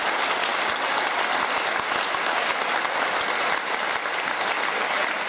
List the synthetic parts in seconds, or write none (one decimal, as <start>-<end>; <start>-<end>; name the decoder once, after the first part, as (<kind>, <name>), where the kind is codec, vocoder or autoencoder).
none